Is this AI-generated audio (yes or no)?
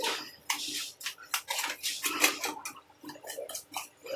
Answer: no